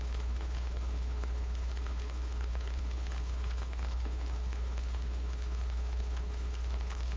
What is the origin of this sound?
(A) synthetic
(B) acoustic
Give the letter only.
A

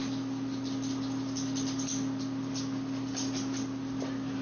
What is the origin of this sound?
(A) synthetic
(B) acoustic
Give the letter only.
B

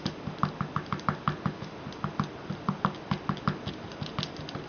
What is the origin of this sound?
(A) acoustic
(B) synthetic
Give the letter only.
A